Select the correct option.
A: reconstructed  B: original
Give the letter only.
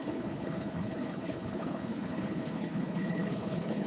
A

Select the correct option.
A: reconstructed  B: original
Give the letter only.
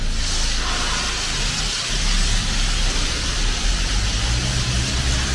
B